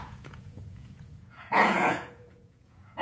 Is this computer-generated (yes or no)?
yes